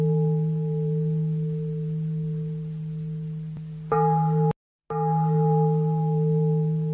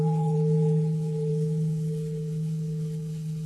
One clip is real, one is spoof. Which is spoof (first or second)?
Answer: second